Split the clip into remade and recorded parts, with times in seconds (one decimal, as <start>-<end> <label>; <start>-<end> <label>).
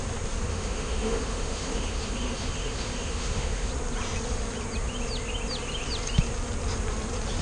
0.0-0.5 recorded; 0.5-3.7 remade; 3.7-7.4 recorded